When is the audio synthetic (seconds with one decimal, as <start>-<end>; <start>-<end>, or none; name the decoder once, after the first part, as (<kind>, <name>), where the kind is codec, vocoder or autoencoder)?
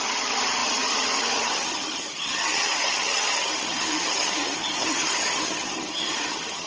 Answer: 0.0-6.7 (vocoder, HiFi-GAN)